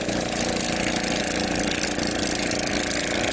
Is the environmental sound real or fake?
real